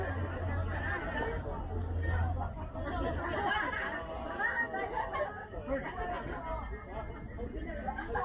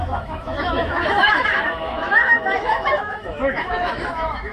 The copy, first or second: second